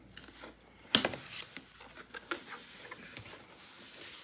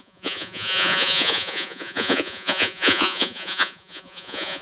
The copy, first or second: second